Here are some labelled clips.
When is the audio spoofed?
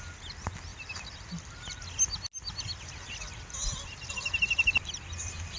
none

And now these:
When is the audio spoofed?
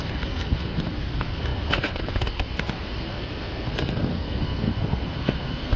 0.0-5.8 (codec, SNAC)